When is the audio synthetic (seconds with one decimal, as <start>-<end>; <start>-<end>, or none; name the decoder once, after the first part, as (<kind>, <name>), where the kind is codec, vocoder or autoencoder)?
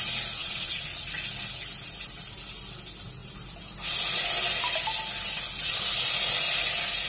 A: 0.4-1.0 (vocoder, Vocos)